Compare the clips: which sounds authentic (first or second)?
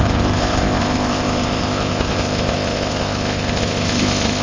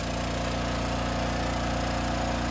second